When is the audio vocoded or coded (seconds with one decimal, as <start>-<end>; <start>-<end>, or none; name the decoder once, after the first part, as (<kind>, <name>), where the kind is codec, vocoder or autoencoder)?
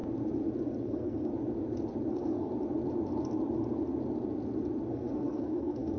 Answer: 0.8-1.3 (codec, SNAC); 2.1-2.5; 4.9-6.0